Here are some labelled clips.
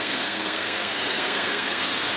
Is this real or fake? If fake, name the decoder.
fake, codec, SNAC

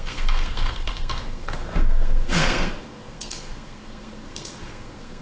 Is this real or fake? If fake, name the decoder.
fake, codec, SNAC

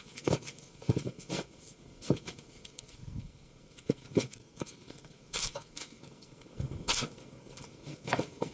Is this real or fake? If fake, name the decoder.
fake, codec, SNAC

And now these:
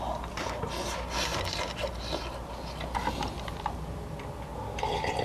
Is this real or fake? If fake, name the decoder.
real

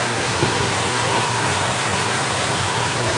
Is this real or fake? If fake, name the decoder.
fake, codec, SNAC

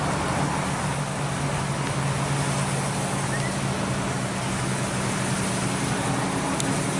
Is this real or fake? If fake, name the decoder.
real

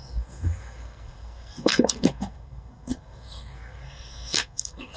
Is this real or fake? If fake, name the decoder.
fake, codec, SNAC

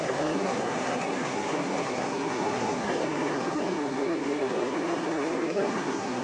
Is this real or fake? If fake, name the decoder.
fake, codec, SNAC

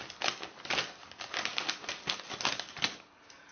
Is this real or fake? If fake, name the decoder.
real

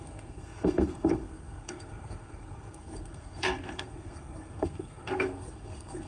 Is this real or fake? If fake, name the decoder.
fake, codec, SNAC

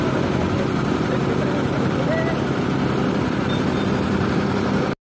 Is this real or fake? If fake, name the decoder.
real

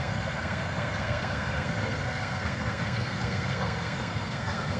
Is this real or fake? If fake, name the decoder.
fake, codec, SNAC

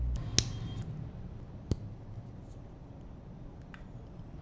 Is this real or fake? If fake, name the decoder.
real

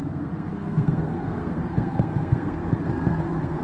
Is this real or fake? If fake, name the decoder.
fake, codec, SNAC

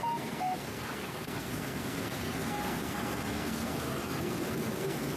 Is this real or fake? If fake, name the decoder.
fake, codec, SNAC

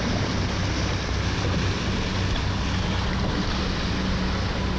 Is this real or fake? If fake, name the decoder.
real